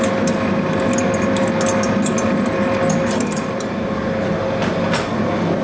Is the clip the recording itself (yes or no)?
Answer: yes